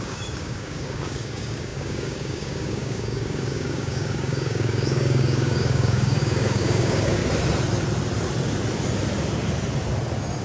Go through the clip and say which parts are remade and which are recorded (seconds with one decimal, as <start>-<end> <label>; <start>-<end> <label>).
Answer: 0.0-7.2 remade; 7.2-10.4 recorded